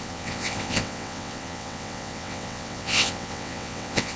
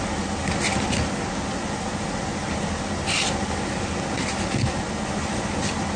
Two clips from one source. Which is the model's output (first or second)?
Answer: first